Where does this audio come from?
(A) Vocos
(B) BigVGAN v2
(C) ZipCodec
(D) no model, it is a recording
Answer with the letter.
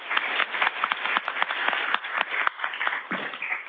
B